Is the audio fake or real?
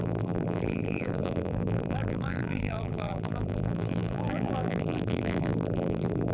fake